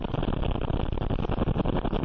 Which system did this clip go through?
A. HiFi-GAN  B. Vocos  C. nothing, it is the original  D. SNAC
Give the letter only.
C